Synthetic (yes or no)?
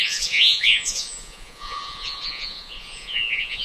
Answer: yes